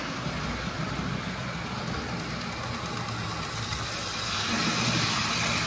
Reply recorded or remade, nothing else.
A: recorded